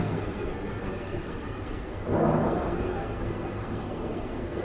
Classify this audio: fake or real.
fake